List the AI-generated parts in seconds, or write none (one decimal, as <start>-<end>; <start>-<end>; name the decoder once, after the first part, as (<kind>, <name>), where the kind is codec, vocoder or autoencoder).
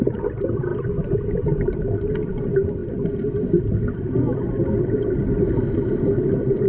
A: none